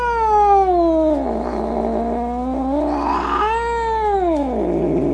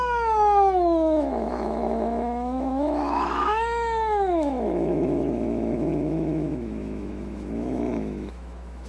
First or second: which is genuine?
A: first